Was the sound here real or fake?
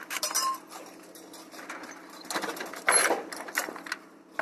real